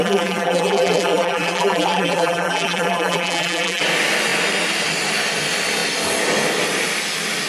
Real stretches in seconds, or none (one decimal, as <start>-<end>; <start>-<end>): 3.8-7.5